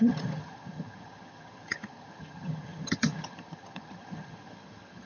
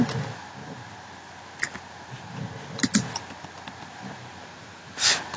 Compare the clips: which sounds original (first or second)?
second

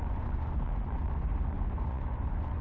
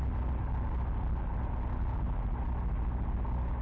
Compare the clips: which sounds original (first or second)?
second